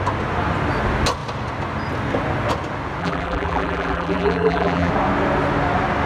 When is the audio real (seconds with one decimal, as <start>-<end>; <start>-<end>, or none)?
0.0-3.0; 4.9-6.1